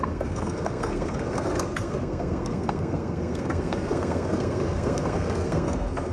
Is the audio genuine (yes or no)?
no